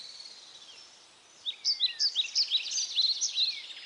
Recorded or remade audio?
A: recorded